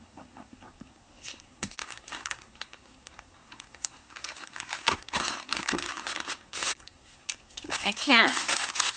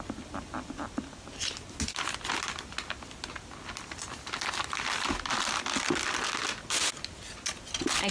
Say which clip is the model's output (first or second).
first